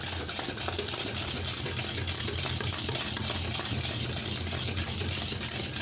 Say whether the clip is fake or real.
real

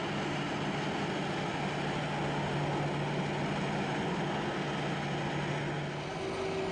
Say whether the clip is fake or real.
real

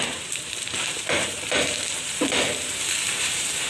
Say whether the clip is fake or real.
fake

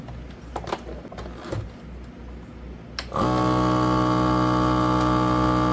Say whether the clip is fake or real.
real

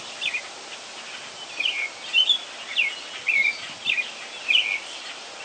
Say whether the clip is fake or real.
real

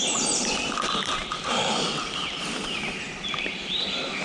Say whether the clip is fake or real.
fake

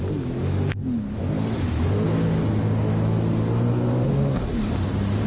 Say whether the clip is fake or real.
real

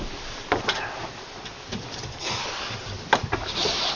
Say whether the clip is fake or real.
fake